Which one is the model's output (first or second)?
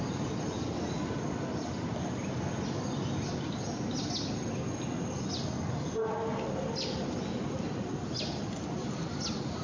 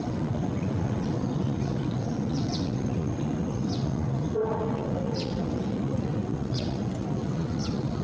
second